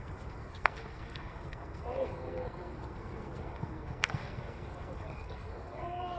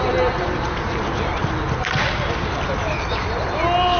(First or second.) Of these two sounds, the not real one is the first